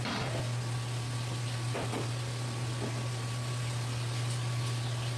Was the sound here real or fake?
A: real